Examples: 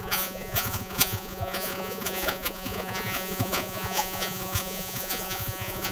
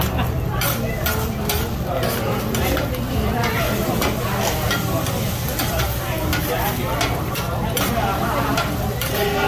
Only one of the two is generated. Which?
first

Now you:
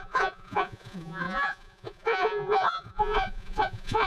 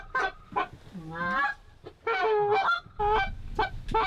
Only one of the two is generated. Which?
first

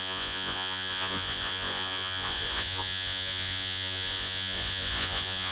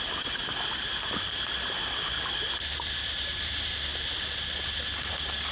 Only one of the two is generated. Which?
first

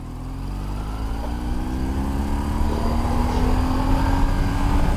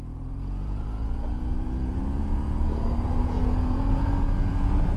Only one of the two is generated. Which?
second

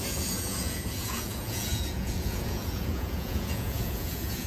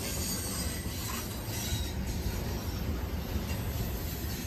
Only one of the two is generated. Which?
first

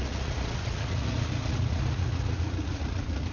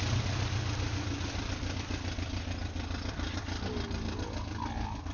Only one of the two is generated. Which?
first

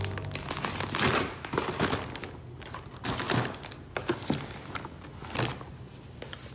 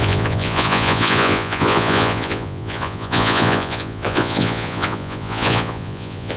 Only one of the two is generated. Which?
second